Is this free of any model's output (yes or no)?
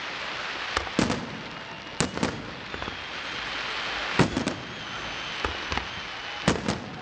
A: yes